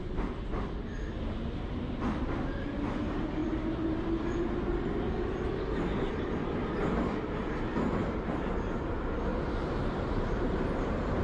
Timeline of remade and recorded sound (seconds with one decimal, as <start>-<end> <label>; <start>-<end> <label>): 0.0-8.0 recorded; 8.0-8.9 remade; 8.9-9.3 recorded; 9.3-11.2 remade